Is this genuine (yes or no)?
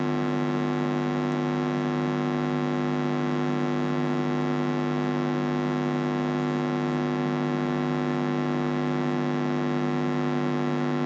yes